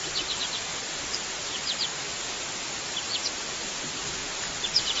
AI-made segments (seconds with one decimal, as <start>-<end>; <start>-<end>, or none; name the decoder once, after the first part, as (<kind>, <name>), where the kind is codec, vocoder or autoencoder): 0.0-0.7 (vocoder, BigVGAN v2); 1.4-4.2